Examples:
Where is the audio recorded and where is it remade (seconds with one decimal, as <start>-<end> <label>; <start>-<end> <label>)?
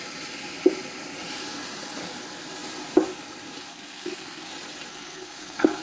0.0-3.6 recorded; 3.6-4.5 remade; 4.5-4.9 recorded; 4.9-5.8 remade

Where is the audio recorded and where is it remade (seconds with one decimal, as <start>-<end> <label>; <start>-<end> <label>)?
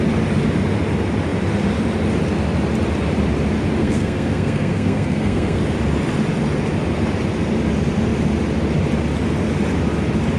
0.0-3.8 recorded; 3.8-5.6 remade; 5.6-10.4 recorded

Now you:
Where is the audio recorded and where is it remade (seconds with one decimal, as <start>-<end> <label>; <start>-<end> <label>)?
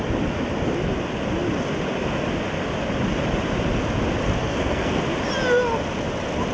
0.0-4.4 recorded; 4.4-5.0 remade; 5.0-6.5 recorded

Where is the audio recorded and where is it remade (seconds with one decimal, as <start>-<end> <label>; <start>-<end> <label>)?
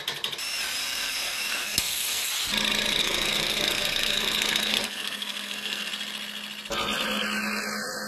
0.0-0.8 recorded; 0.8-2.3 remade; 2.3-3.0 recorded; 3.0-5.9 remade; 5.9-8.1 recorded